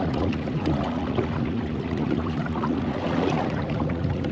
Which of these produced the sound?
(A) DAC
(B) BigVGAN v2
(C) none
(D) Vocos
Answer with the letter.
D